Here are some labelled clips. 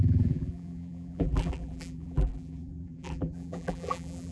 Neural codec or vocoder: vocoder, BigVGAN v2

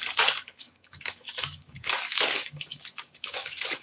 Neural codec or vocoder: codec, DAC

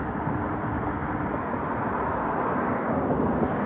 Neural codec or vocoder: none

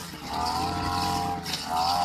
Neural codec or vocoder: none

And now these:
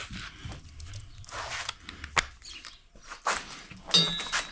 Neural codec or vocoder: none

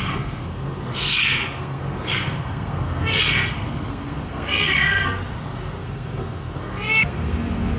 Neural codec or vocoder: codec, SNAC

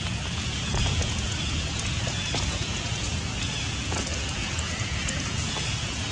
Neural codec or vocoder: vocoder, Vocos